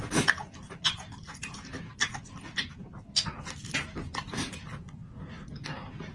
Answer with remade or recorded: recorded